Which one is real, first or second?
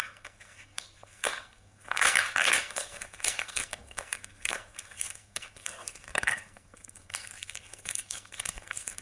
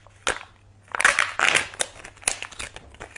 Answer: second